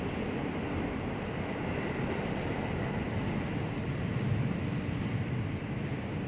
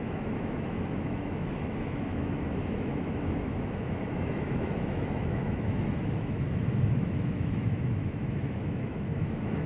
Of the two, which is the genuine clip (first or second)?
first